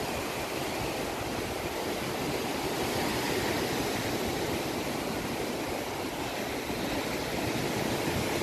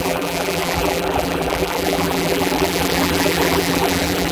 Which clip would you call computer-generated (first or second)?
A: second